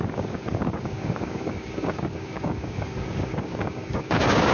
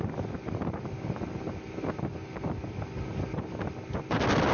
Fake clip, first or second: first